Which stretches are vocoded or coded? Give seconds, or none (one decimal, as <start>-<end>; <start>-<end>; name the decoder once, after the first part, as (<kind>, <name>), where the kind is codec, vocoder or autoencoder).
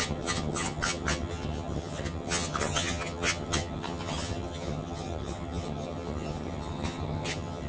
0.0-7.7 (vocoder, HiFi-GAN)